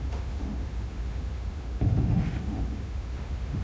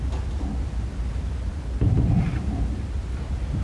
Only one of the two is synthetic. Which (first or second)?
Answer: first